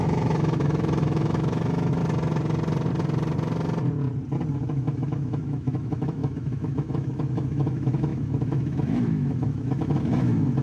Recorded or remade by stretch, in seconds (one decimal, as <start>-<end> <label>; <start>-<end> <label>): 0.0-2.0 remade; 2.0-4.5 recorded; 4.5-10.6 remade